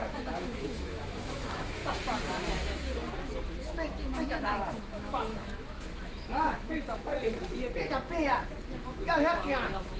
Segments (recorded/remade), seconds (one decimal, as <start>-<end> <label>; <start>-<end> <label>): 0.0-1.8 remade; 1.8-3.4 recorded; 3.4-7.1 remade; 7.1-8.9 recorded; 8.9-10.0 remade